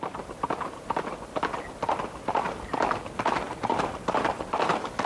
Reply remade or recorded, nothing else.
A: recorded